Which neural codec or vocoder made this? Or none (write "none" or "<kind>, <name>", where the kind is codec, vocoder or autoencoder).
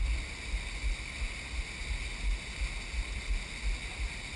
none